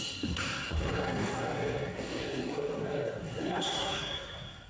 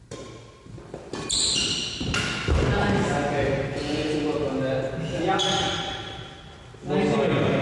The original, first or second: second